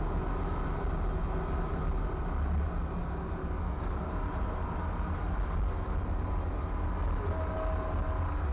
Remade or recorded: recorded